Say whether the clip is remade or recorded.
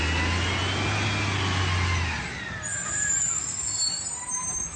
recorded